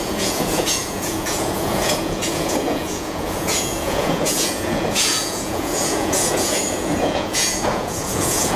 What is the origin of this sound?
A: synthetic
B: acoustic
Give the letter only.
A